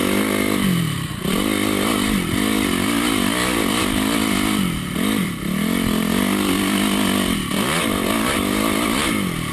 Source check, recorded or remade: recorded